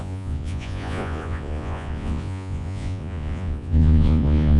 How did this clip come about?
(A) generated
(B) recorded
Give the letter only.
A